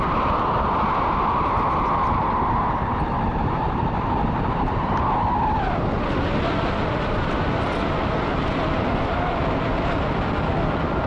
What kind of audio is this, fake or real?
real